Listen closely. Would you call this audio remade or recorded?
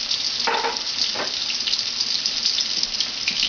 recorded